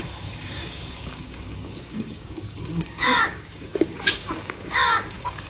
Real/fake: fake